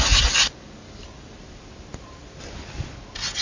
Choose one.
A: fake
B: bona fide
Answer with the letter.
B